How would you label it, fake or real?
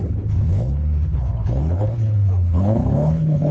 fake